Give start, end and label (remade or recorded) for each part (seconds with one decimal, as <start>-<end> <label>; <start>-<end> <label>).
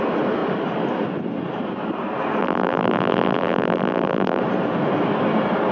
0.0-2.4 recorded; 2.4-4.4 remade; 4.4-5.7 recorded